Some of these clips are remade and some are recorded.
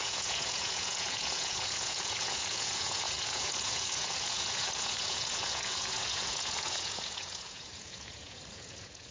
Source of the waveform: remade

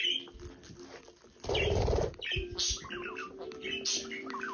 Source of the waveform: recorded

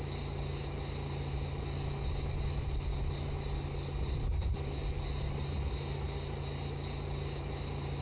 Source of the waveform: recorded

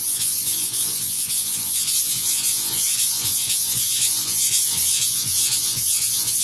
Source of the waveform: remade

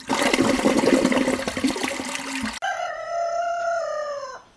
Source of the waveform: recorded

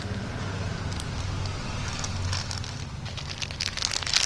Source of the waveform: recorded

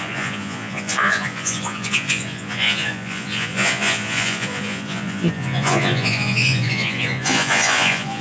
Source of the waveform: remade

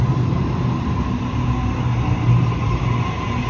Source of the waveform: recorded